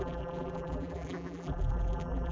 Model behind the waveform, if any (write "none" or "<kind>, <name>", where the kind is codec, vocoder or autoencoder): vocoder, BigVGAN v2